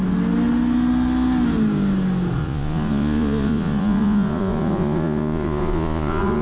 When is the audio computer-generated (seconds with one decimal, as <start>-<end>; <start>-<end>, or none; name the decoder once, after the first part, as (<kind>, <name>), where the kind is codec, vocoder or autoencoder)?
2.4-6.4 (vocoder, Vocos)